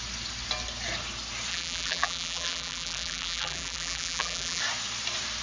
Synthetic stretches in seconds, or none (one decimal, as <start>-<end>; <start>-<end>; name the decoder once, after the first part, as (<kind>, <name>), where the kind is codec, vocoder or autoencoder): 1.5-4.6 (vocoder, BigVGAN v2)